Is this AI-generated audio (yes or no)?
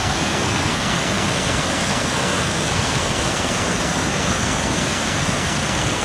yes